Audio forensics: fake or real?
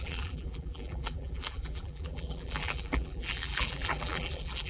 fake